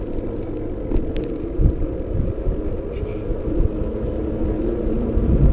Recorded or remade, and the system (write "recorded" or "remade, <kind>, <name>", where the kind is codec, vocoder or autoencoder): recorded